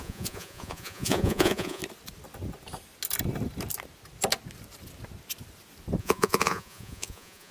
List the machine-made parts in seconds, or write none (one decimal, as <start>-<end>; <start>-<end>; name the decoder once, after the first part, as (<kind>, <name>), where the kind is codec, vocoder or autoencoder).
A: 0.0-1.8 (vocoder, Vocos); 6.0-7.5